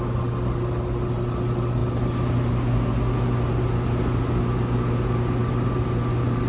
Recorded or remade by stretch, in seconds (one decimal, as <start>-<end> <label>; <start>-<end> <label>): 0.0-6.5 recorded